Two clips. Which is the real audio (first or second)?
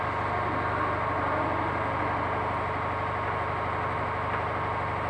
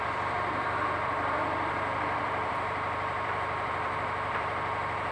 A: first